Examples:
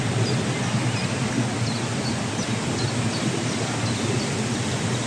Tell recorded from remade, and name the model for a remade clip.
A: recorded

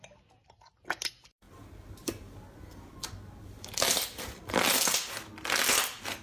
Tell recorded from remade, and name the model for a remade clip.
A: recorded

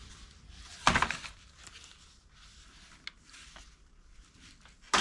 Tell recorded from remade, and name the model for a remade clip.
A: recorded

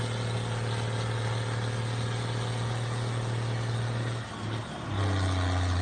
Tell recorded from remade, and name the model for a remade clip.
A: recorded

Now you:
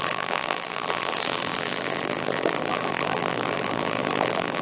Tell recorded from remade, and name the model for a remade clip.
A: remade, vocoder, BigVGAN v2